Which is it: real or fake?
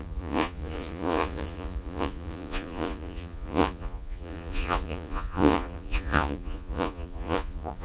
fake